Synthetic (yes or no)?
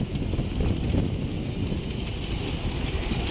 no